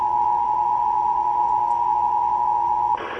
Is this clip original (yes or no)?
no